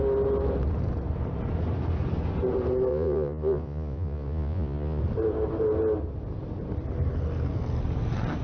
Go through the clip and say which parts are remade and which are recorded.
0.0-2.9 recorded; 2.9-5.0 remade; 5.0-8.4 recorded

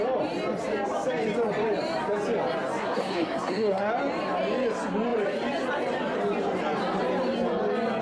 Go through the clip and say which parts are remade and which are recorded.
0.0-2.8 recorded; 2.8-3.9 remade; 3.9-8.0 recorded

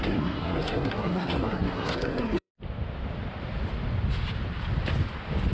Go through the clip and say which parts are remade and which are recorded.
0.0-2.5 remade; 2.5-5.5 recorded

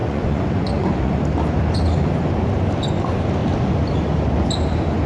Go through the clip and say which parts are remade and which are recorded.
0.0-1.1 remade; 1.1-5.1 recorded

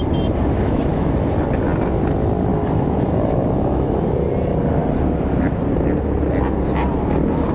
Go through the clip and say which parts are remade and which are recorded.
0.0-0.5 recorded; 0.5-1.2 remade; 1.2-2.5 recorded; 2.5-4.1 remade; 4.1-7.5 recorded